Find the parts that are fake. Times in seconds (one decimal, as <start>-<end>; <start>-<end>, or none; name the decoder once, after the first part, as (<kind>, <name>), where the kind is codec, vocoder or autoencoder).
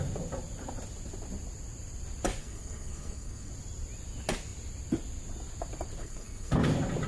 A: 2.4-3.5 (codec, SNAC); 6.0-6.5